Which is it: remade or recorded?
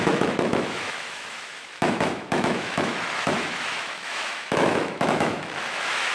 remade